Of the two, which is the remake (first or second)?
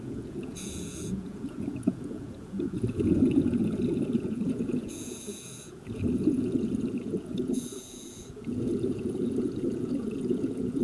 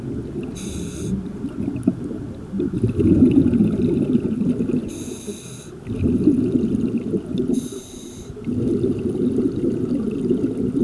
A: first